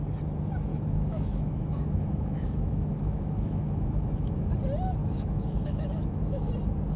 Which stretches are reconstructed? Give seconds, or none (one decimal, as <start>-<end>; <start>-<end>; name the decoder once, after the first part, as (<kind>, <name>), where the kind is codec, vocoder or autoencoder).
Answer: 0.7-4.5 (autoencoder, DAC-VAE); 5.0-6.5